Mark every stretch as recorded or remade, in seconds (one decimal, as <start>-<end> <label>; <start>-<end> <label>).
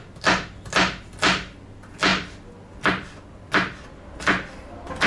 0.0-5.1 recorded